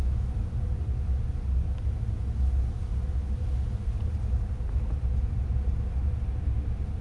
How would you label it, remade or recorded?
recorded